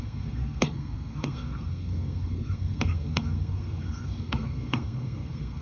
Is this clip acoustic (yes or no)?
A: no